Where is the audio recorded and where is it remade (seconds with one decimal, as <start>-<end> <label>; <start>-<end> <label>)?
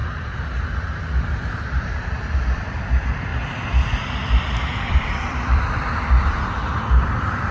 0.0-1.8 recorded; 1.8-3.3 remade; 3.3-4.0 recorded; 4.0-7.5 remade